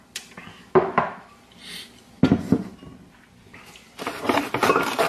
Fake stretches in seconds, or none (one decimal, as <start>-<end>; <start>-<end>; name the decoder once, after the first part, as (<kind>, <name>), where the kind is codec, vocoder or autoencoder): 0.5-1.3 (autoencoder, DAC-VAE)